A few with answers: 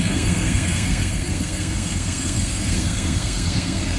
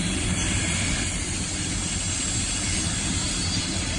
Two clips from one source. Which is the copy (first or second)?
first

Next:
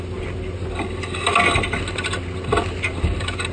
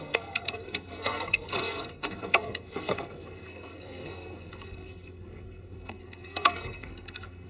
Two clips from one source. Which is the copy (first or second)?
second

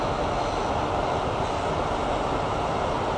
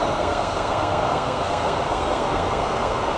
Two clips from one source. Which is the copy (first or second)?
second